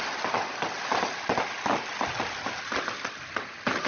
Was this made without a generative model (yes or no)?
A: yes